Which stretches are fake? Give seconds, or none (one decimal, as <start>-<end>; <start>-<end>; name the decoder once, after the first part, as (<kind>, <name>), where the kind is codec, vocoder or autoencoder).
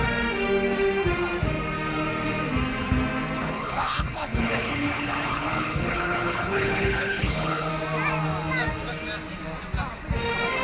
3.4-7.7 (codec, HILCodec)